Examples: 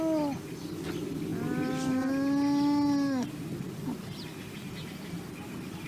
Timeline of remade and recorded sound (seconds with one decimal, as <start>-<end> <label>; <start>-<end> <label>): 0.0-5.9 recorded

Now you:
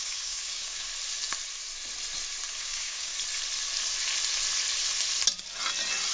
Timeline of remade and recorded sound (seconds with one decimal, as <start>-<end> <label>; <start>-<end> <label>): 0.0-0.9 remade; 0.9-2.6 recorded; 2.6-3.1 remade; 3.1-6.1 recorded

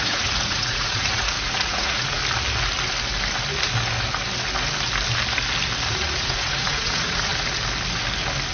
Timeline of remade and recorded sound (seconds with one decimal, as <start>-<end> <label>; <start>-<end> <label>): 0.0-2.2 remade; 2.2-5.9 recorded; 5.9-7.3 remade; 7.3-8.5 recorded

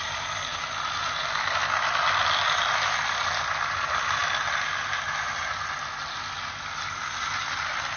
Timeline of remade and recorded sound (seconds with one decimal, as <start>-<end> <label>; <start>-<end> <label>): 0.0-8.0 recorded

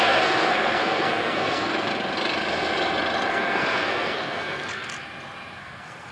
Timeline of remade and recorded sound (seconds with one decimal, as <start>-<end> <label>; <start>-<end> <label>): 0.0-1.9 remade; 1.9-3.3 recorded; 3.3-4.9 remade; 4.9-5.6 recorded; 5.6-6.1 remade